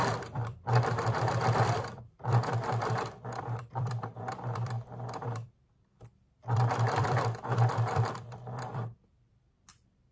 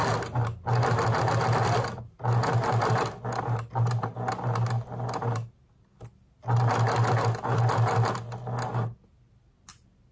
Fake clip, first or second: first